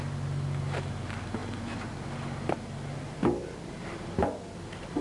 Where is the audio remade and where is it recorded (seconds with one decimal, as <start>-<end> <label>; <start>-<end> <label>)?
0.0-5.0 recorded